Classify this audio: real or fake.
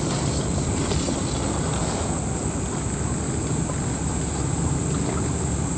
real